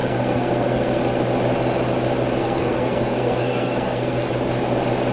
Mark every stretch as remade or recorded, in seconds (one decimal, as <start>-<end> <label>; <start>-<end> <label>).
0.0-1.0 remade; 1.0-2.4 recorded; 2.4-4.3 remade; 4.3-5.1 recorded